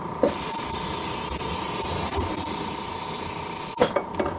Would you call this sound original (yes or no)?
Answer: yes